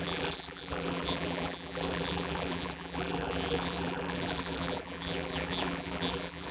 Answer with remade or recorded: remade